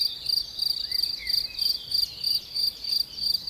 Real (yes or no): yes